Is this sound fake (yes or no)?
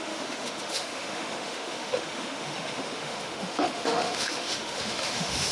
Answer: yes